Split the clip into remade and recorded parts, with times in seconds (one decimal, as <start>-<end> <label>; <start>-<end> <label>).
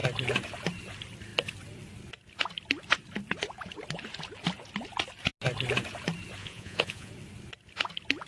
0.0-6.4 recorded; 6.4-7.1 remade; 7.1-8.3 recorded